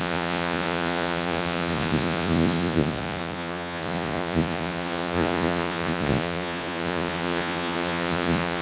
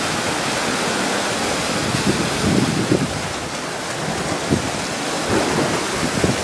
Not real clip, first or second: first